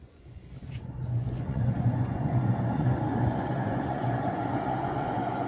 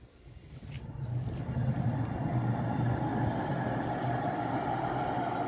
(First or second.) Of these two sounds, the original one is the second